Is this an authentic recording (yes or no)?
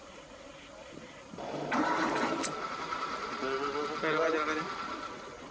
yes